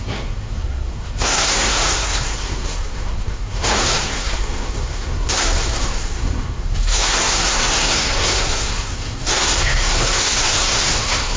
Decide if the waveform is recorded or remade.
remade